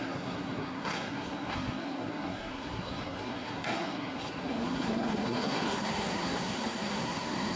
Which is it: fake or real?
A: fake